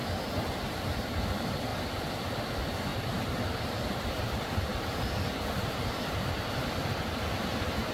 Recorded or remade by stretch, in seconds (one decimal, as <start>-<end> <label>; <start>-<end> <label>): 0.0-0.6 recorded; 0.6-1.7 remade; 1.7-2.5 recorded; 2.5-2.9 remade; 2.9-7.9 recorded